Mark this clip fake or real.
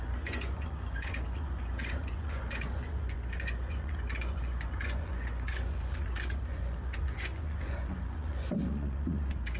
fake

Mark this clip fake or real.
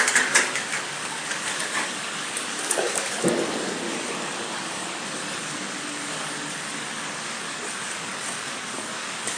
fake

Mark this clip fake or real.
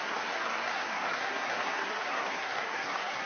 fake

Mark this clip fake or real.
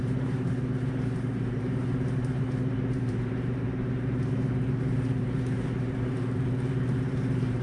fake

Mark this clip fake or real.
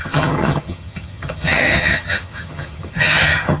fake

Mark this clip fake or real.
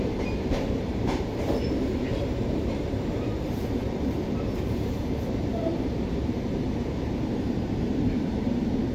fake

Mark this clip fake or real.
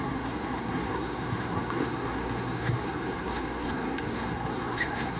fake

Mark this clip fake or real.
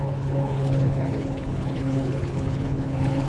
fake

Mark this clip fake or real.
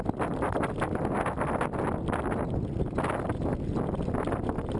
real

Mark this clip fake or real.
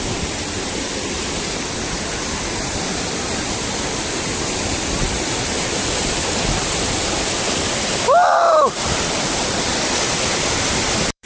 fake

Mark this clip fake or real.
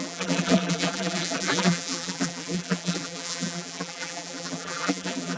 fake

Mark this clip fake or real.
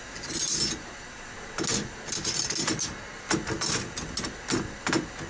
real